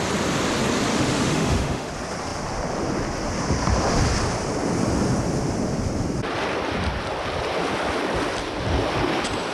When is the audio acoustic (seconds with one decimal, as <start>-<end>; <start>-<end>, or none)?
0.0-0.9; 1.9-9.5